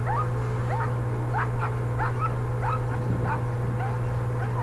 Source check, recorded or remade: recorded